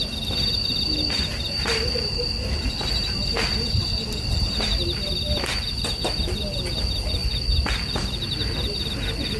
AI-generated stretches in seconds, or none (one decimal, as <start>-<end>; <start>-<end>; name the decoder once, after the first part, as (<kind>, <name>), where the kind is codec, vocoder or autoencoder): none

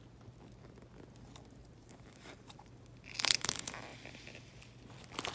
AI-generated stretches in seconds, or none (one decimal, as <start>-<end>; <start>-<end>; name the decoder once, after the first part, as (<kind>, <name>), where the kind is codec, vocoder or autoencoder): 1.6-2.7 (vocoder, BigVGAN v2)

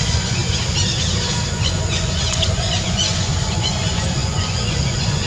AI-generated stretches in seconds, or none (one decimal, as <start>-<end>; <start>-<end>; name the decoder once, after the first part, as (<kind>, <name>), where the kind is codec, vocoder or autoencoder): 0.0-0.4 (vocoder, Vocos); 1.5-5.3